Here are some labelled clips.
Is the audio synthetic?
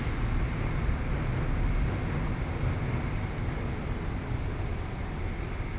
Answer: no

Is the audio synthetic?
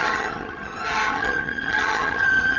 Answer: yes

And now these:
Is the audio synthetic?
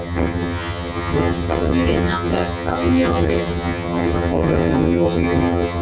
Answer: yes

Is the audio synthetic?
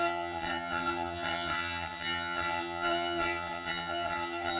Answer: yes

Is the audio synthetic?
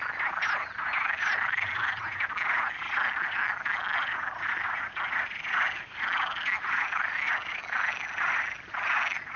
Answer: no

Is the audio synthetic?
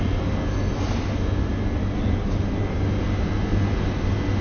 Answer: no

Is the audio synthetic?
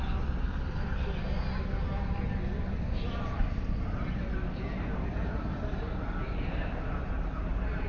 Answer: no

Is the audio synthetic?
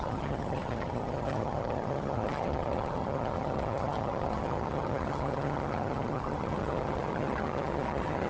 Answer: yes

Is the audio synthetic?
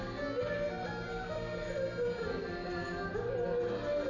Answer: no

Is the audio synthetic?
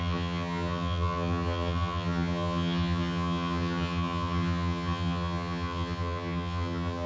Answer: yes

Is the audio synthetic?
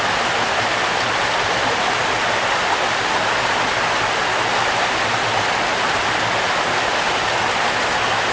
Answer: no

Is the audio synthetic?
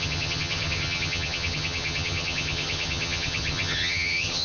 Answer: yes